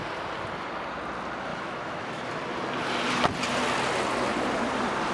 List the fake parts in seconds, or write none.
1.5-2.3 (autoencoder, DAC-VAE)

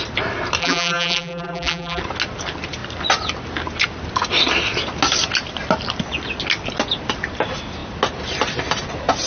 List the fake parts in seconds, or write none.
0.6-2.0 (vocoder, BigVGAN v2)

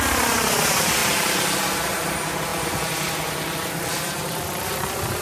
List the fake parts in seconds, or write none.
1.0-1.7 (vocoder, BigVGAN v2); 2.5-3.9